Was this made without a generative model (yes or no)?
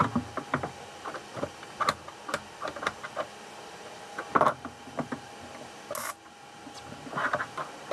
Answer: yes